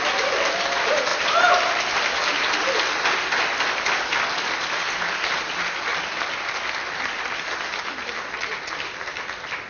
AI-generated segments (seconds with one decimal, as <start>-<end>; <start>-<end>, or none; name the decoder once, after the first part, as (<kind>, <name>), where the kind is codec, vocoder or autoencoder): none